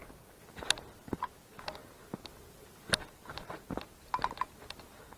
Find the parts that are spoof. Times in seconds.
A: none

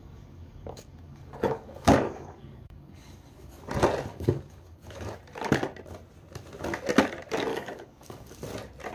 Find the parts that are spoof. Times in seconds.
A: 0.0-3.6; 4.1-5.2; 7.5-8.4

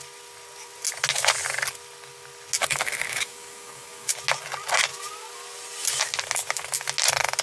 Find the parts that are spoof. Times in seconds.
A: 2.6-4.1

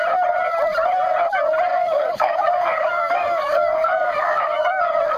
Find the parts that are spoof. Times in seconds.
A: 1.7-4.8

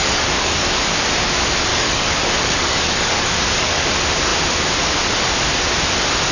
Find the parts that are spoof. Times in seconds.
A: 0.0-0.8; 1.7-3.9